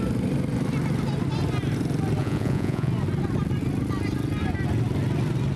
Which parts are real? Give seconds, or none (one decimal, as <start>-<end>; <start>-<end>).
0.0-2.2; 2.9-5.6